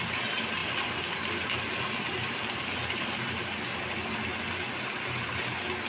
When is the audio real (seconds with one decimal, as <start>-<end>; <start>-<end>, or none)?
0.0-0.6; 3.4-5.9